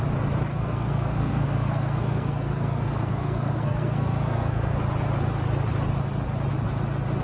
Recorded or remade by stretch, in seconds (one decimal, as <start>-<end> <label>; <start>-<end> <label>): 0.0-0.5 recorded; 0.5-4.8 remade; 4.8-7.2 recorded